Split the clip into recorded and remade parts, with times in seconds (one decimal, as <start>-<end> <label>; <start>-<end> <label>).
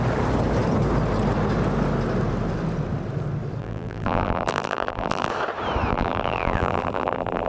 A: 0.0-3.6 recorded; 3.6-5.3 remade; 5.3-5.9 recorded; 5.9-7.5 remade